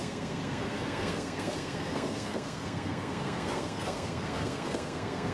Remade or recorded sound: remade